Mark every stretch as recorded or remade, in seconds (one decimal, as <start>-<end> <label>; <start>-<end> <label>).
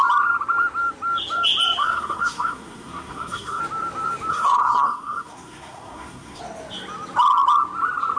0.0-1.8 recorded; 1.8-3.6 remade; 3.6-4.3 recorded; 4.3-6.4 remade; 6.4-8.2 recorded